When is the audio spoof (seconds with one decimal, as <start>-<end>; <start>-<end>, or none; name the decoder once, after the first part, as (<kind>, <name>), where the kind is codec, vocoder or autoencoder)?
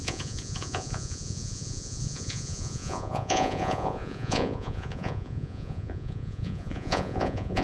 0.0-7.6 (vocoder, Vocos)